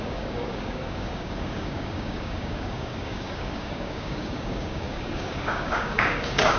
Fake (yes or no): yes